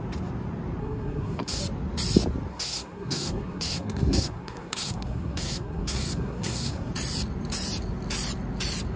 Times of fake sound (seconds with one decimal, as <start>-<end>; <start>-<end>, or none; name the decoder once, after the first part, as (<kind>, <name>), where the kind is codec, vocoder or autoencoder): 0.8-1.6 (codec, SNAC); 2.5-6.9